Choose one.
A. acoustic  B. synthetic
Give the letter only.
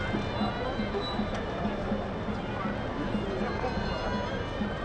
A